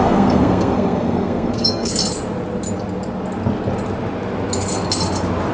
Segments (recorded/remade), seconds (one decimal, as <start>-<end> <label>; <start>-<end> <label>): 0.0-2.0 remade; 2.0-5.5 recorded